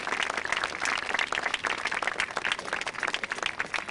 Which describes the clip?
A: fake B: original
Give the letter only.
B